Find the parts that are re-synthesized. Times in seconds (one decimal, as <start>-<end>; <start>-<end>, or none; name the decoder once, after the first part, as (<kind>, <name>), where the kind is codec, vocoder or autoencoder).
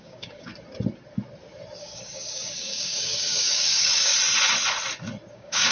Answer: 0.0-0.5 (codec, DAC); 1.8-4.1; 5.3-5.7